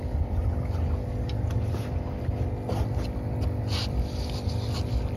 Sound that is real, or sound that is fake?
real